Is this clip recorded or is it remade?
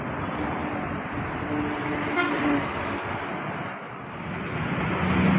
recorded